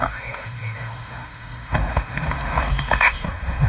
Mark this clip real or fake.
fake